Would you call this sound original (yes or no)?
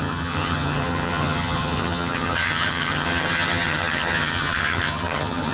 no